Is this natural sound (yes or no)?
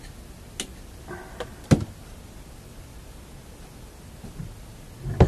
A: yes